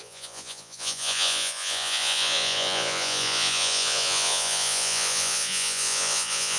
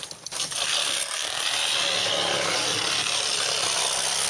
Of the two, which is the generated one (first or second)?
first